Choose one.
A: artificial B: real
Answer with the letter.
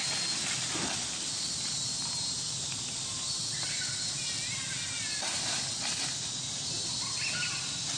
B